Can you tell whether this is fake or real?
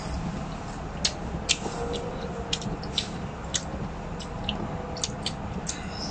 real